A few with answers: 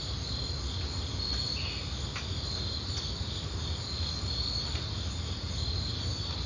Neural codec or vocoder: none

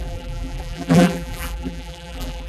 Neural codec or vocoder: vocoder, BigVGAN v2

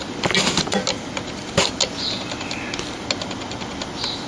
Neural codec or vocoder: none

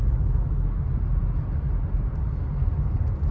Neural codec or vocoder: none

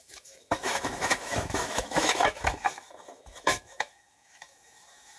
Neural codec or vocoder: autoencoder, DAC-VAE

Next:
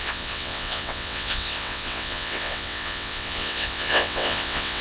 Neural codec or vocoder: vocoder, WaveNeXt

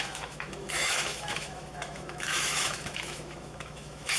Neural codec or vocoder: autoencoder, DAC-VAE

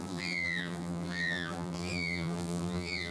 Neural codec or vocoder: vocoder, BigVGAN v2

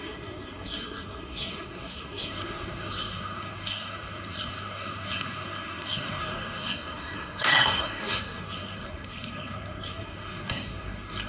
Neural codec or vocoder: codec, SNAC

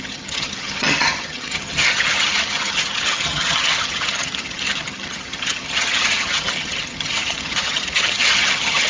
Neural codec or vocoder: vocoder, HiFi-GAN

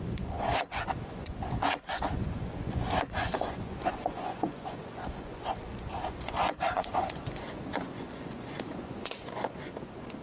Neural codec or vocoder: vocoder, Vocos